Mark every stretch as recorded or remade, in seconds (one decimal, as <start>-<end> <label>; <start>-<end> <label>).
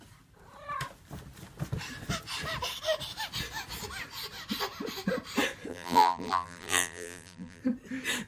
0.0-5.7 recorded; 5.7-7.6 remade; 7.6-8.3 recorded